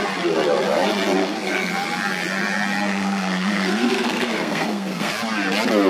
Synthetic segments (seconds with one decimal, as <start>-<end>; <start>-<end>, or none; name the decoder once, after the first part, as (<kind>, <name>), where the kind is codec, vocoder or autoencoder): 1.2-1.7 (codec, SNAC); 2.9-5.1